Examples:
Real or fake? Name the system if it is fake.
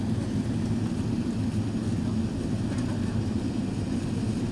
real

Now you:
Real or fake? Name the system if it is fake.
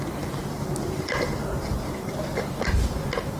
real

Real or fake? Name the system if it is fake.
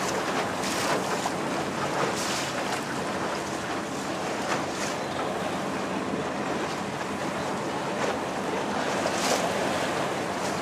real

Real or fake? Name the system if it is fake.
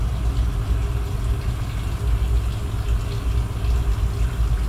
real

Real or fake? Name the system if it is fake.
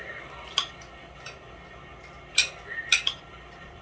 real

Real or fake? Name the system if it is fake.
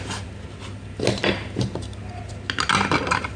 real